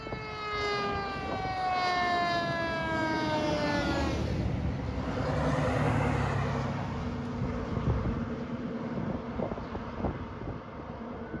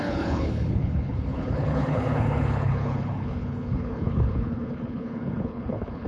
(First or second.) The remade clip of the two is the second